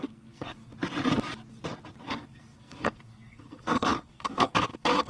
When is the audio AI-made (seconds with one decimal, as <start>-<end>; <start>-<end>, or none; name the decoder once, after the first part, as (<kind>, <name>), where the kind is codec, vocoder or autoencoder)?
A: 0.0-0.7 (codec, SNAC); 2.1-5.1